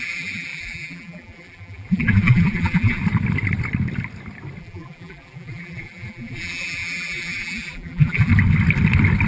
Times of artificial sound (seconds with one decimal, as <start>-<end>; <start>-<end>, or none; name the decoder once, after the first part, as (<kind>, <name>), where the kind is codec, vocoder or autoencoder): 0.0-3.0 (vocoder, BigVGAN v2); 4.6-8.3